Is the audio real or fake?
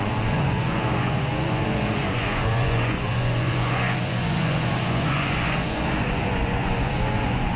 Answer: fake